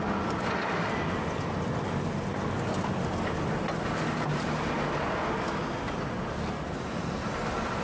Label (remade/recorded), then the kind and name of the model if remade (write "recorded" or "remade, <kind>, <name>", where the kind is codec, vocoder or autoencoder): recorded